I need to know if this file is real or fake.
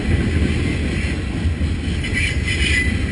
real